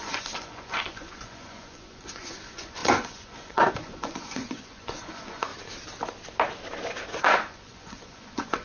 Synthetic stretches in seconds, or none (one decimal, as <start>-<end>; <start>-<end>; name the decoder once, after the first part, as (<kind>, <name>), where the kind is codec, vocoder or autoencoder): 0.0-5.5 (vocoder, Vocos); 7.2-8.6